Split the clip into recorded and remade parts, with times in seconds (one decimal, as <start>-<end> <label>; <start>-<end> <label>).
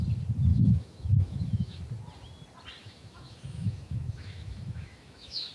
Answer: 0.0-0.5 recorded; 0.5-1.8 remade; 1.8-2.8 recorded; 2.8-5.5 remade